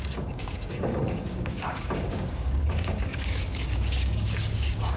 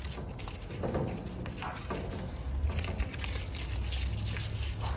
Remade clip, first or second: first